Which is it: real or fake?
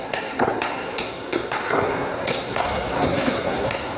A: fake